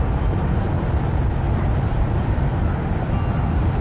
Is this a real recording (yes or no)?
yes